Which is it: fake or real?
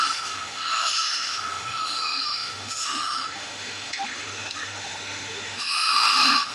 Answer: fake